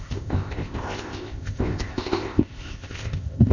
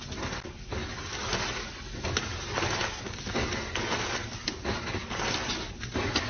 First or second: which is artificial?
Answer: first